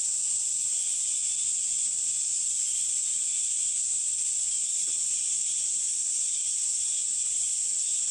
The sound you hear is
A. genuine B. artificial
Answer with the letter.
A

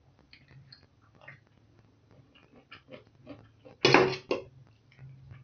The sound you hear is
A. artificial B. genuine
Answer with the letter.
B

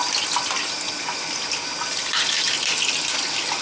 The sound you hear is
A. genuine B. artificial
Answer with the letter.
A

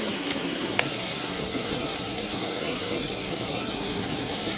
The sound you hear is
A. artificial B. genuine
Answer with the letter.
A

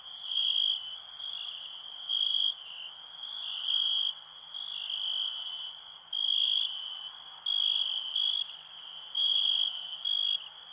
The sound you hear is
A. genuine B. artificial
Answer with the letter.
A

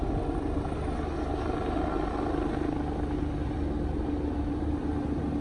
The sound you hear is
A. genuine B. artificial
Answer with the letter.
A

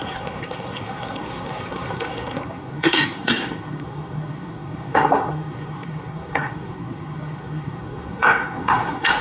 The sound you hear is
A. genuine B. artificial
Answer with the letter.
B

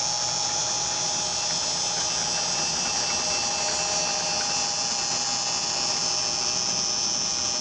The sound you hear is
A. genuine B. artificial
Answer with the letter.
A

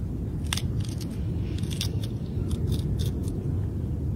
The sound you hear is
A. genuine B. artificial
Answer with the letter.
A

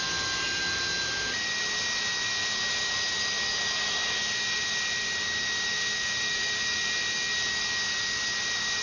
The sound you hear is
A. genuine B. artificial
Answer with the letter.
A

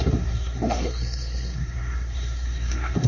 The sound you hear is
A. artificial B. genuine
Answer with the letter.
A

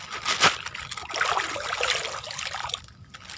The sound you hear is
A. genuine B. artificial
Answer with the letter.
A